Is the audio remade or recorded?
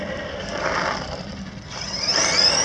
remade